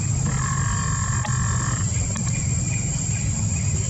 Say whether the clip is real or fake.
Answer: real